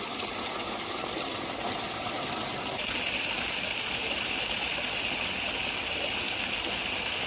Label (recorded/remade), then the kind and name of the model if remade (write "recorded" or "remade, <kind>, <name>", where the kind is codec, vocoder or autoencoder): recorded